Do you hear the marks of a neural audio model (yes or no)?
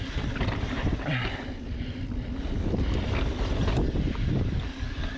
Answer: no